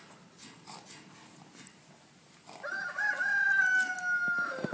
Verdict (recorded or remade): recorded